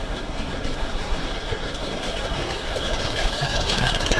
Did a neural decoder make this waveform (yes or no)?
yes